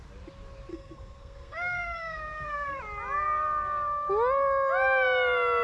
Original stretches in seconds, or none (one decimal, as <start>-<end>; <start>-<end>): 0.0-0.7; 2.8-5.6